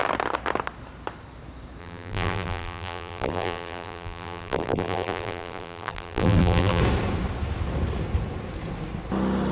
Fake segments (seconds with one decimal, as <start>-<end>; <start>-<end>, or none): 1.8-6.8